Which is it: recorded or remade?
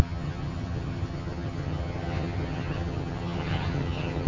remade